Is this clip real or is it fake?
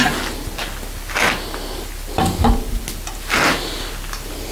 real